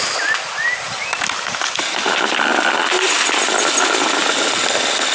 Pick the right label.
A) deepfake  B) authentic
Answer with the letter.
B